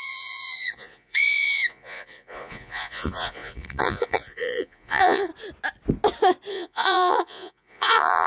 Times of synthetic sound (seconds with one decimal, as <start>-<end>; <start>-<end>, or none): 0.0-5.3; 6.5-8.3